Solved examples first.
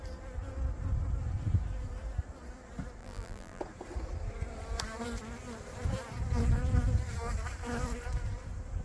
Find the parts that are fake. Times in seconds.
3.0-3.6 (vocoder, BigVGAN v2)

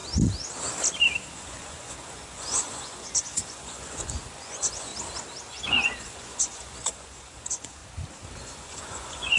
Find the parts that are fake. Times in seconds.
1.3-4.9 (vocoder, Vocos); 5.5-7.8; 8.4-9.4

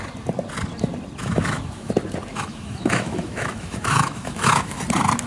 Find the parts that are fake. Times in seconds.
1.2-1.9 (autoencoder, DAC-VAE); 2.3-4.8

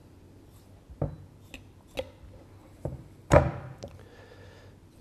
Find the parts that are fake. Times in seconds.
2.6-3.4 (vocoder, BigVGAN v2)

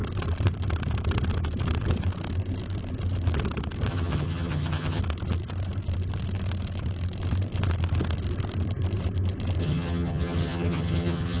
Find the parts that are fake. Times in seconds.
3.9-5.0 (vocoder, HiFi-GAN); 9.6-11.4

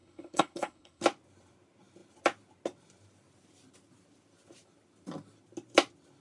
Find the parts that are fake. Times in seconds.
0.0-1.0 (codec, HILCodec)

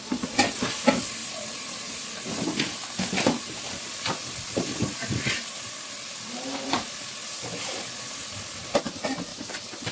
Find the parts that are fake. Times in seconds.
0.0-8.2 (vocoder, BigVGAN v2); 8.8-9.9